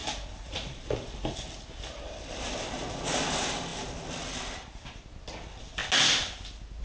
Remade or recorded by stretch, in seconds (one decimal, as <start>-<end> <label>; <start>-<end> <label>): 0.0-2.7 remade; 2.7-6.8 recorded